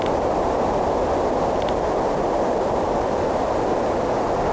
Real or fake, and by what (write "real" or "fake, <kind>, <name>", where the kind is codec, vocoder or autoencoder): real